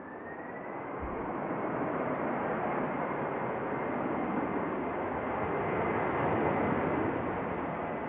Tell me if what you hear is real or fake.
real